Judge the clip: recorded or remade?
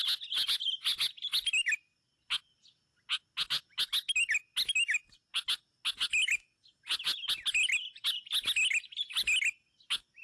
recorded